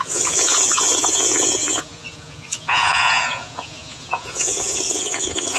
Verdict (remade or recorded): remade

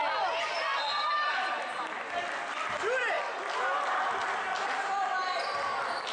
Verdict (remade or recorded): recorded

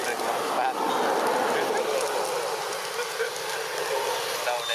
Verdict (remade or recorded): recorded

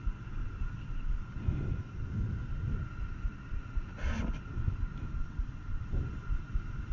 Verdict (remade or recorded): recorded